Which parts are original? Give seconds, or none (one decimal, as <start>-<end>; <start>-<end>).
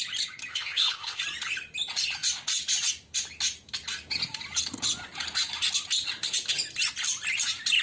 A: 0.0-0.5; 1.2-7.8